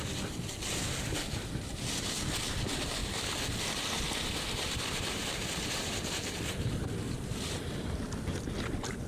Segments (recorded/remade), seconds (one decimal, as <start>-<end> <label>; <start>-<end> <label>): 0.0-9.1 recorded